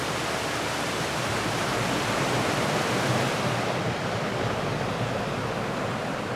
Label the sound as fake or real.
fake